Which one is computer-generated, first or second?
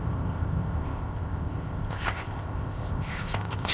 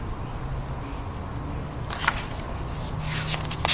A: first